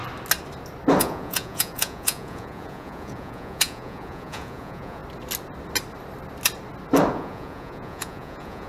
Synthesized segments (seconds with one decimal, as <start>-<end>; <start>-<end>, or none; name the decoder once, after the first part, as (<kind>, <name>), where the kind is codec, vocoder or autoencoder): 1.0-5.0 (vocoder, Vocos); 7.1-8.7